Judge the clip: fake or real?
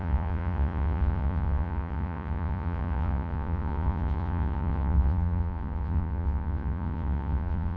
fake